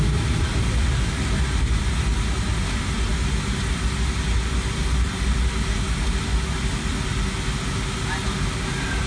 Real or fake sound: real